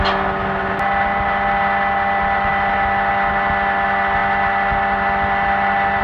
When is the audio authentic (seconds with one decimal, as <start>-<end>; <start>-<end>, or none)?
0.0-6.0